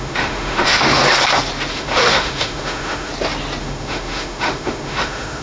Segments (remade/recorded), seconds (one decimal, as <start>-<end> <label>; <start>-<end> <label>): 0.0-1.0 remade; 1.0-1.7 recorded; 1.7-3.1 remade; 3.1-3.6 recorded; 3.6-5.4 remade